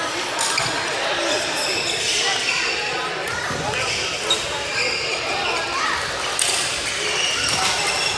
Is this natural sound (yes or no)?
yes